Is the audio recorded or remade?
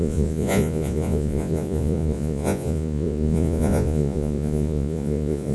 remade